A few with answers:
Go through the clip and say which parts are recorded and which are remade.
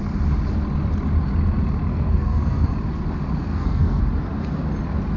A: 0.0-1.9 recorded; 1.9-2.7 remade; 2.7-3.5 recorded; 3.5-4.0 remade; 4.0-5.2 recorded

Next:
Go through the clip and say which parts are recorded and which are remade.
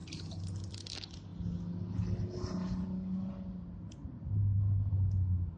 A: 0.0-4.9 recorded; 4.9-5.6 remade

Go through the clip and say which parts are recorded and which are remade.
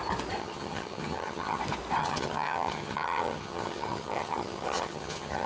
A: 0.0-0.4 recorded; 0.4-1.6 remade; 1.6-2.0 recorded; 2.0-5.5 remade